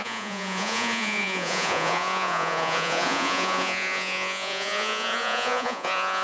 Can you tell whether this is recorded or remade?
remade